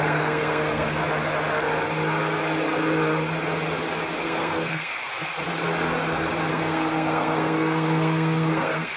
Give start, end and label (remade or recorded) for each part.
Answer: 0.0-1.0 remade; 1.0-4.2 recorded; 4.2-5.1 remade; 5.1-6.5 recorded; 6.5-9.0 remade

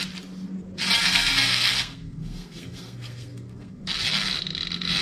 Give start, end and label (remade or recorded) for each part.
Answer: 0.0-1.0 recorded; 1.0-3.8 remade; 3.8-5.0 recorded

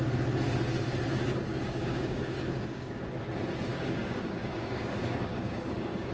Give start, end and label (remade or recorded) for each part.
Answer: 0.0-1.5 recorded; 1.5-3.1 remade; 3.1-3.7 recorded; 3.7-6.1 remade

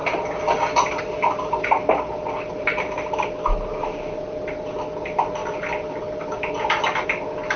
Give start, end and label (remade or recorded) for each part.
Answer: 0.0-7.6 recorded